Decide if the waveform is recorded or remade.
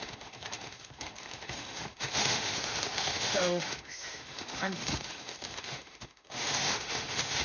remade